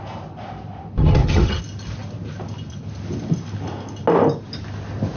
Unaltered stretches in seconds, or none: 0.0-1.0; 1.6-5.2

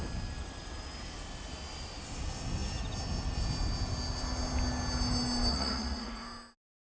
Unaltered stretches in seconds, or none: 0.0-5.5; 6.2-6.9

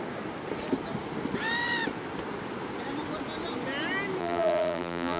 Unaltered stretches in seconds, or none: 0.0-4.2

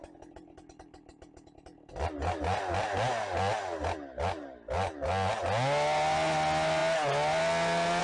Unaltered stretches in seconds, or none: 0.0-8.0

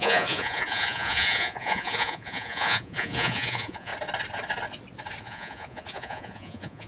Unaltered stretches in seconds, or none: 3.9-5.2

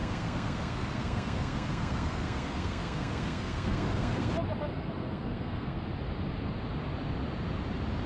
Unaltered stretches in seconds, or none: 4.3-4.7; 5.8-8.1

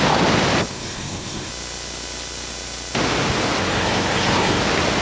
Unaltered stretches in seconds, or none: 0.0-0.7; 1.5-3.6; 4.6-5.0

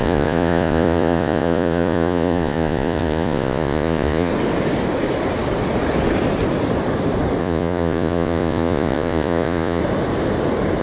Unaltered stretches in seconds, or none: 4.3-7.4; 9.8-10.8